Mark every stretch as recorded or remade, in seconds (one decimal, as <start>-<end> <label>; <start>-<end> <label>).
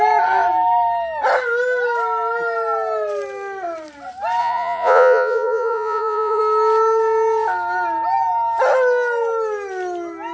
0.0-4.4 recorded; 4.4-6.4 remade; 6.4-10.3 recorded